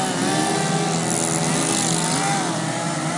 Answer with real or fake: real